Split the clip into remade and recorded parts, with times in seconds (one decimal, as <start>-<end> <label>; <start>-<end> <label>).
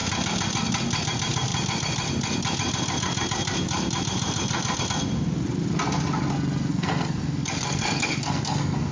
0.0-6.7 recorded; 6.7-8.9 remade